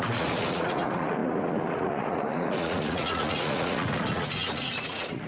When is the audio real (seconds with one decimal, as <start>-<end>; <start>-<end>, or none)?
none